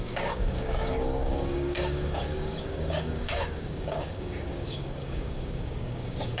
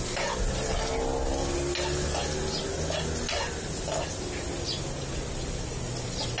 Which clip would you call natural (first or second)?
second